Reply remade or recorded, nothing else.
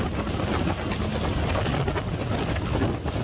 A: recorded